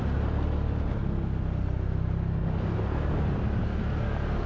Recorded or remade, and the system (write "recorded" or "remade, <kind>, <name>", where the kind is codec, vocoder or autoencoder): recorded